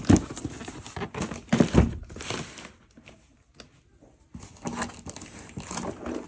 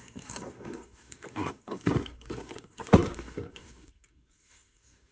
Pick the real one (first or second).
first